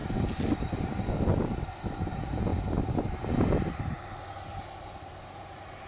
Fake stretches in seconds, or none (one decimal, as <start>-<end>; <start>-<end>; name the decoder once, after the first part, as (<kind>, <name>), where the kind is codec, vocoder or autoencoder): none